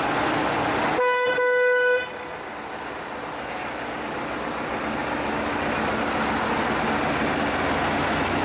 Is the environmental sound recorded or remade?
recorded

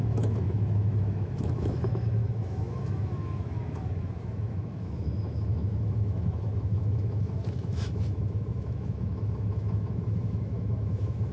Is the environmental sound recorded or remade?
remade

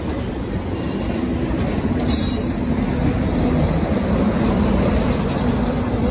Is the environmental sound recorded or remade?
recorded